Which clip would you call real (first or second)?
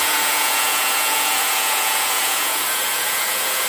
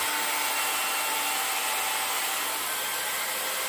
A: second